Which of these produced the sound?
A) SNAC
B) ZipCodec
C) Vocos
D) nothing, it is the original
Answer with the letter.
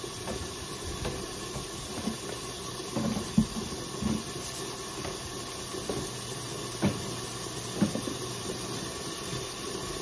D